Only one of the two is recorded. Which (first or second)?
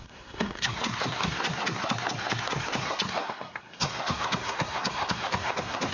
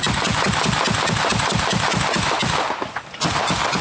second